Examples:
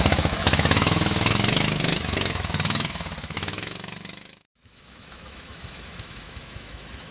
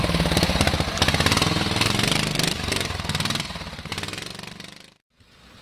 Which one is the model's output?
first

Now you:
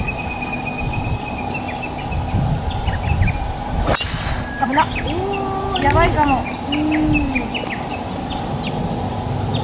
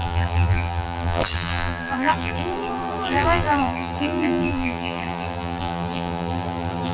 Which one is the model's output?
second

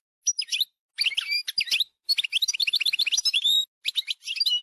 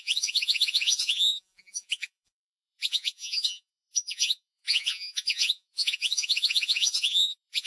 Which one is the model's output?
second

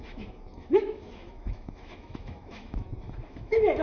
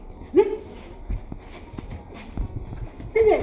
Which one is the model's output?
first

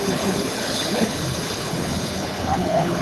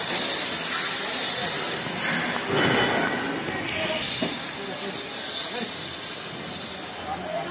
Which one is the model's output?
first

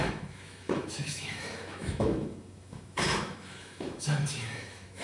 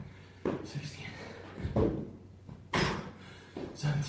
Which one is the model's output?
first